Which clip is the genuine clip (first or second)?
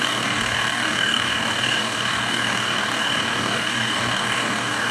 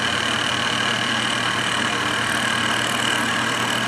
second